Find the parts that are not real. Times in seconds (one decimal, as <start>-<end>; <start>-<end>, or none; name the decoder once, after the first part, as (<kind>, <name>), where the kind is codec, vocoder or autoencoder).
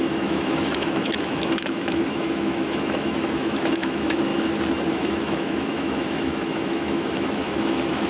0.0-4.3 (autoencoder, DAC-VAE); 4.9-8.1